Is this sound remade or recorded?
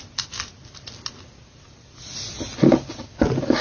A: recorded